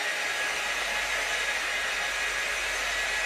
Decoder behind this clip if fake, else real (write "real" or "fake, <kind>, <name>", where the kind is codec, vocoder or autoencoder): real